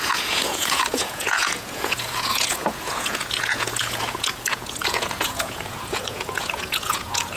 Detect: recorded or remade remade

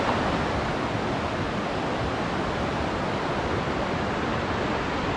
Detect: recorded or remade recorded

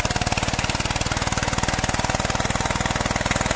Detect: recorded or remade recorded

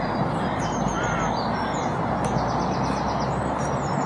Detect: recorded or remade recorded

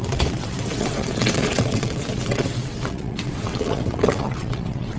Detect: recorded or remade remade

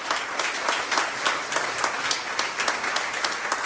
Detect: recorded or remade recorded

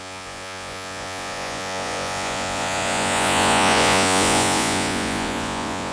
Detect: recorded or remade remade